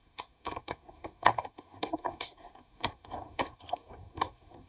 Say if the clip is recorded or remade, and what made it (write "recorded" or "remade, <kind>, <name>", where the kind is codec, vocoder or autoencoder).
remade, codec, SNAC